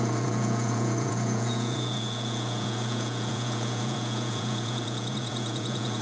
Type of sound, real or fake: fake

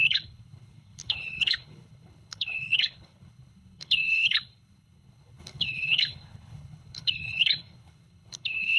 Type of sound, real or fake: fake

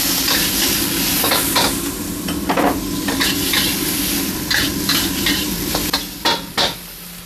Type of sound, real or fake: real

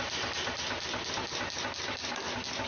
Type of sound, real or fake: real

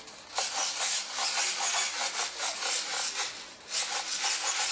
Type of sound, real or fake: real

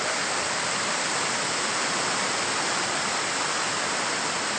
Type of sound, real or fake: real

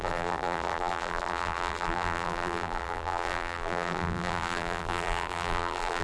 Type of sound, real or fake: fake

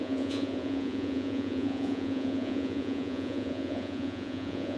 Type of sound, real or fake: fake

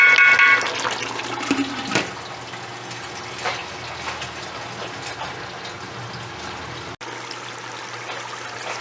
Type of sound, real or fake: real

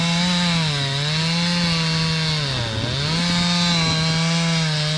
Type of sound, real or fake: real